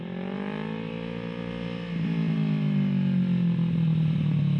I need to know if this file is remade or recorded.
recorded